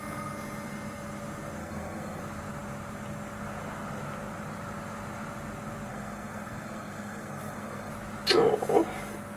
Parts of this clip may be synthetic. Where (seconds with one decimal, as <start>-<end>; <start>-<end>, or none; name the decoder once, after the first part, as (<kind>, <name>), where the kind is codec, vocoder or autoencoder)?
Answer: 1.6-2.2 (codec, SNAC); 5.9-7.9